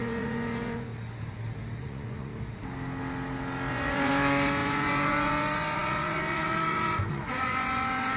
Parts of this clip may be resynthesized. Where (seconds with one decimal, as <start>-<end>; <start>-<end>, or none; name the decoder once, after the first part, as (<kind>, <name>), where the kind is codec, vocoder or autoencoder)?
0.0-0.9 (vocoder, Vocos); 1.8-2.3; 3.7-8.2